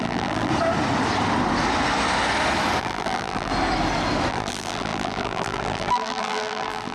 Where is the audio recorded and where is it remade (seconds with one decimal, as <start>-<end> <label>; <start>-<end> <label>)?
0.0-0.5 remade; 0.5-2.8 recorded; 2.8-3.5 remade; 3.5-4.3 recorded; 4.3-6.9 remade

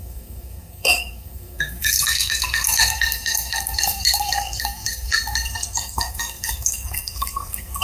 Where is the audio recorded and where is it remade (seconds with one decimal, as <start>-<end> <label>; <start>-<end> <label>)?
0.0-7.8 remade

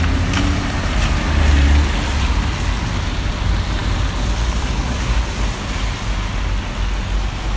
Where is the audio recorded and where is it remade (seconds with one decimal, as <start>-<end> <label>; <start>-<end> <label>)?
0.0-7.6 recorded